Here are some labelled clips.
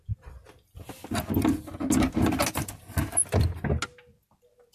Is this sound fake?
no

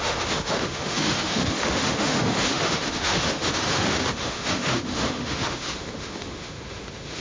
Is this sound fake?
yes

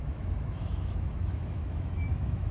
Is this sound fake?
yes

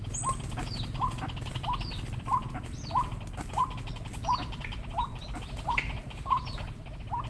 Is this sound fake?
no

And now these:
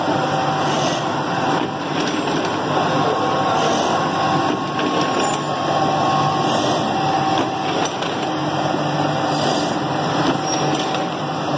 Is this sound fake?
no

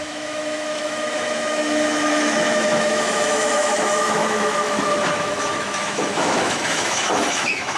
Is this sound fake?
yes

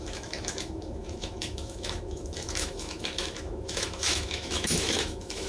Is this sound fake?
yes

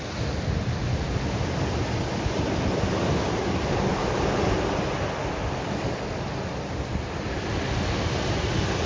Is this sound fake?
no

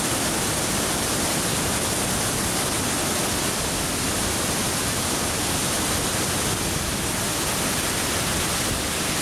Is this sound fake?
no